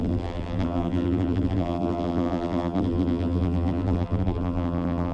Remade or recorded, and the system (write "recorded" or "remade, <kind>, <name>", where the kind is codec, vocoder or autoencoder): remade, vocoder, BigVGAN v2